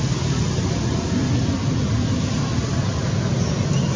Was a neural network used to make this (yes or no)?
no